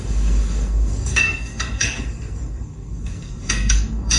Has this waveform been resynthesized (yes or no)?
yes